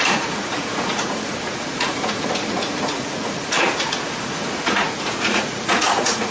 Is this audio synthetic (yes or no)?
yes